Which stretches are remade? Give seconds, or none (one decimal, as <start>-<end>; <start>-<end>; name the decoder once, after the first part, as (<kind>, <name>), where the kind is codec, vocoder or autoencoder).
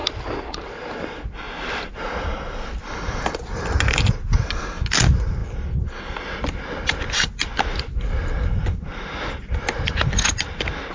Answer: none